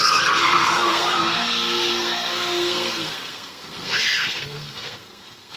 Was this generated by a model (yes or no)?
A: yes